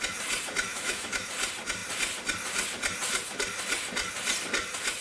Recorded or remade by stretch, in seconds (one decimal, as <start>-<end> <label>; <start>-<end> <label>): 0.0-0.7 recorded; 0.7-1.3 remade; 1.3-5.0 recorded